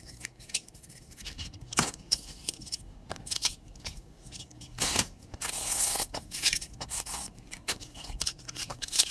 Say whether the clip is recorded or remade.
remade